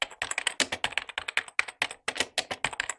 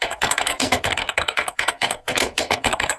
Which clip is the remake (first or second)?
second